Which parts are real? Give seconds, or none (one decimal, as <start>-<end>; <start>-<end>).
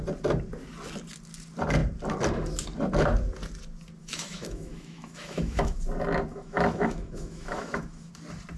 0.0-4.0; 5.8-6.3; 8.1-8.6